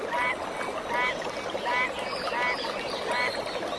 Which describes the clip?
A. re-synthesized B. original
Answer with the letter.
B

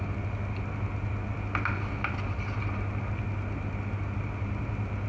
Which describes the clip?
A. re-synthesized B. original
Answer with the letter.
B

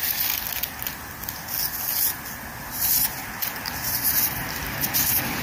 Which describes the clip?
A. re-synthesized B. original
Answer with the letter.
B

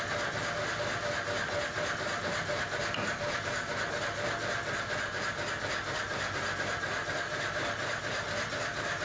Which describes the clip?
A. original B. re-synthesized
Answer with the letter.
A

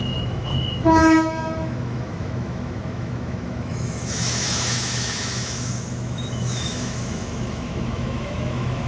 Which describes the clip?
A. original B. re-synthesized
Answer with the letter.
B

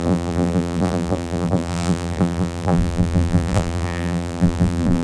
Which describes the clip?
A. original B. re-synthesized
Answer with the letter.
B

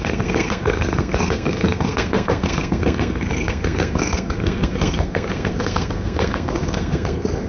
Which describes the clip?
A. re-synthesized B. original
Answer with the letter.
A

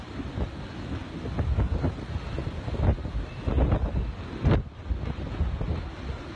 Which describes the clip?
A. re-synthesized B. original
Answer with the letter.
B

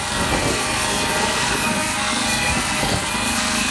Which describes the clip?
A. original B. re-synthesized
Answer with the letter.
B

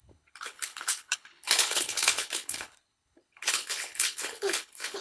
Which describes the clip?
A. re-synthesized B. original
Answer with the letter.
A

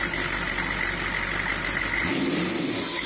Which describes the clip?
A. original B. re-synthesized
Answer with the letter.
A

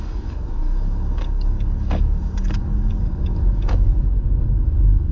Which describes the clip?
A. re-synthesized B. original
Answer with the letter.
A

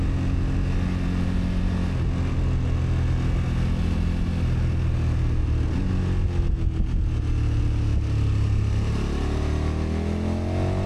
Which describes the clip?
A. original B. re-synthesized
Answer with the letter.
A